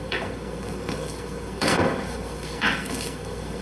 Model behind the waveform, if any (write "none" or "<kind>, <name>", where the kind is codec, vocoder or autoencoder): codec, SNAC